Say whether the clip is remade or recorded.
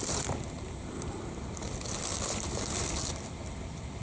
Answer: recorded